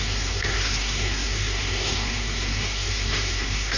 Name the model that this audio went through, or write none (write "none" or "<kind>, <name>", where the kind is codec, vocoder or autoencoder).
codec, SNAC